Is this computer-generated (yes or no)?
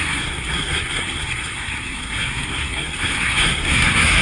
yes